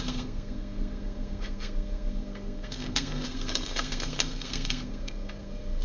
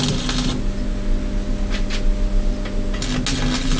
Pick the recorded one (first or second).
second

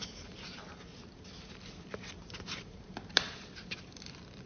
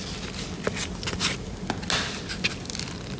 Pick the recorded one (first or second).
second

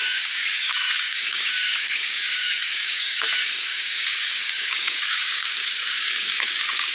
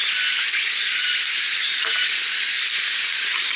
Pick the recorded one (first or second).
second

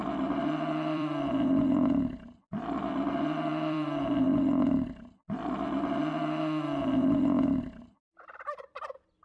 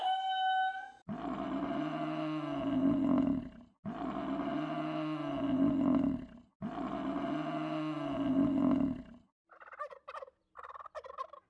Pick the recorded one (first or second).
second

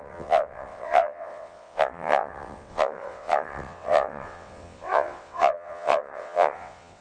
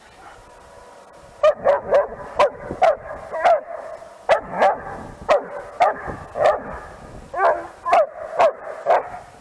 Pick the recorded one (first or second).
second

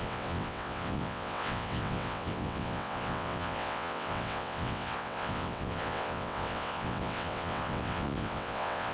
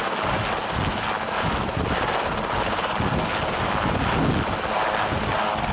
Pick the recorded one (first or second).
second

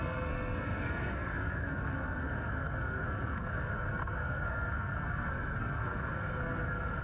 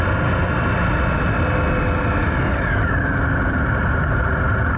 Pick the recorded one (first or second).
second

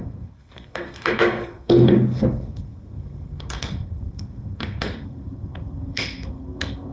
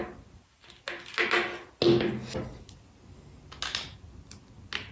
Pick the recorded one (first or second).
second